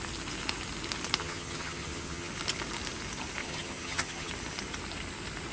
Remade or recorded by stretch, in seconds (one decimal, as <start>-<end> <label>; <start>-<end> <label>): 0.0-1.2 recorded; 1.2-2.3 remade; 2.3-3.4 recorded; 3.4-4.3 remade; 4.3-5.5 recorded